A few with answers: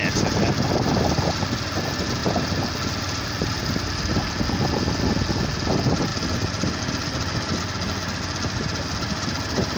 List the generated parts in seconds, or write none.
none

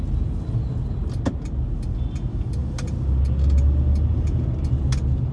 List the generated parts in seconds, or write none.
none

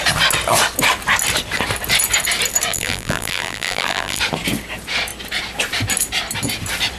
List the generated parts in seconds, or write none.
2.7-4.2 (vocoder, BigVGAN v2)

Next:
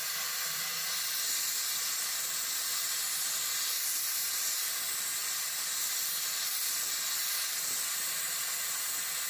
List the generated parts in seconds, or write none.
0.0-0.7 (vocoder, BigVGAN v2); 3.5-9.3